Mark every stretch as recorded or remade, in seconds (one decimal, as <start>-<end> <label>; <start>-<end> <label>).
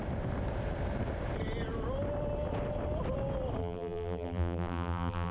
0.0-3.6 recorded; 3.6-5.3 remade